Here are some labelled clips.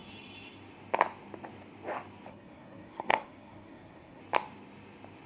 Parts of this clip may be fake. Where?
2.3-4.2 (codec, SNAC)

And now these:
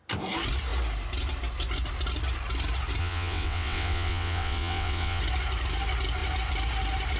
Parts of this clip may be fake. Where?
3.0-5.2 (vocoder, WaveNeXt)

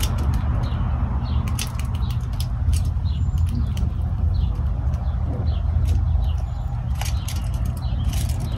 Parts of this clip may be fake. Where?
2.7-4.5 (vocoder, BigVGAN v2)